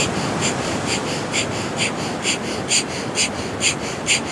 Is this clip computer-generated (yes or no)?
no